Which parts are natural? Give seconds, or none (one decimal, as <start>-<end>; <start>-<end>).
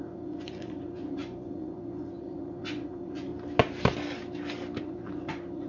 3.3-4.8